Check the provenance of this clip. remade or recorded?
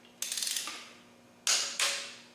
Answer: recorded